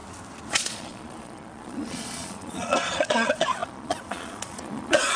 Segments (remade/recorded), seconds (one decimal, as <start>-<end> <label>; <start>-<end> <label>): 0.0-0.5 recorded; 0.5-5.2 remade